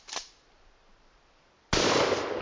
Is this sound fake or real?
real